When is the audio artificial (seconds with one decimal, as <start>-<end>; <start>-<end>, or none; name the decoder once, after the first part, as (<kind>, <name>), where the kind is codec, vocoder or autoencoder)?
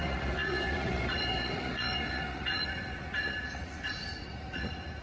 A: 0.0-5.0 (vocoder, Vocos)